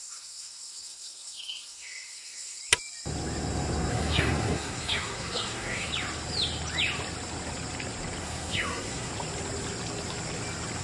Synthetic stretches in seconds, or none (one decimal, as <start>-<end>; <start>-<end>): 0.0-2.6; 3.9-5.9; 8.2-9.1